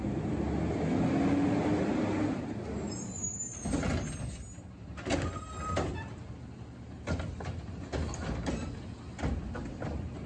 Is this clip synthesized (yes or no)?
no